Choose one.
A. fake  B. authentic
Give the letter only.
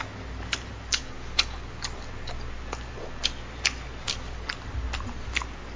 B